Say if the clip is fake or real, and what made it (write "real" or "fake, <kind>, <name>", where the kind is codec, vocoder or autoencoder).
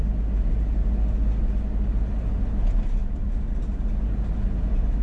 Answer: real